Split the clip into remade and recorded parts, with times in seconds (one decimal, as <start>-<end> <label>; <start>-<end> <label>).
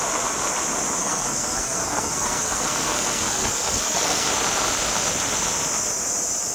0.0-1.0 recorded; 1.0-4.3 remade; 4.3-6.5 recorded